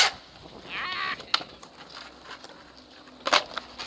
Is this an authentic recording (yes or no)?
yes